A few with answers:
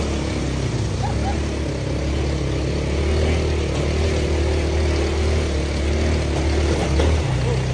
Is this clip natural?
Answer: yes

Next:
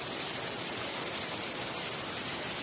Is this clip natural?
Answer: yes